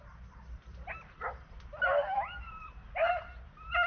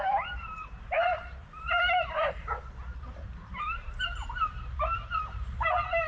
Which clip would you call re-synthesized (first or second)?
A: second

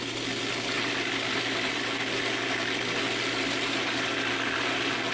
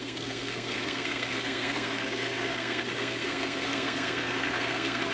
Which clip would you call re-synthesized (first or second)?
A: second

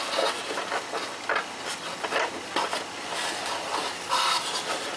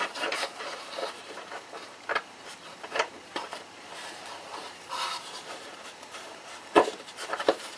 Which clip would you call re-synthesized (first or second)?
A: second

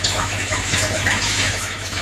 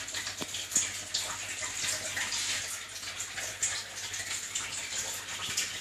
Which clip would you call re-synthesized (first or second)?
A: first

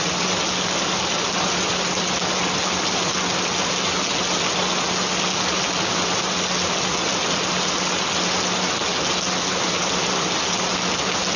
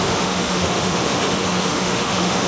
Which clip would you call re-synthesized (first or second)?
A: second